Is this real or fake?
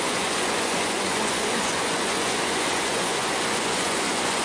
fake